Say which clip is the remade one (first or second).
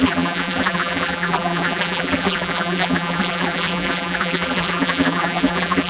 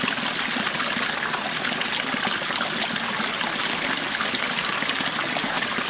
first